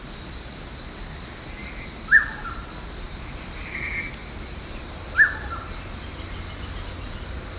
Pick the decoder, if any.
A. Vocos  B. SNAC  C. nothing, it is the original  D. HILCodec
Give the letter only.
C